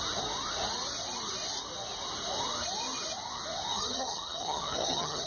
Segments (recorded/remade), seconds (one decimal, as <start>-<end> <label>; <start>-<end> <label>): 0.0-3.7 recorded; 3.7-5.3 remade